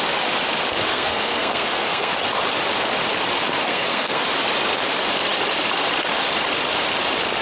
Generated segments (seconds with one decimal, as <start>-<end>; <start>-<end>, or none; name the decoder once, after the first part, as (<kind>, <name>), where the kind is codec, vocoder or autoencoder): 0.9-2.1 (codec, SNAC); 3.7-4.2